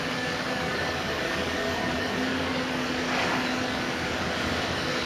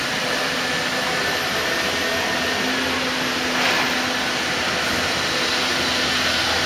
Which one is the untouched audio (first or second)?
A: second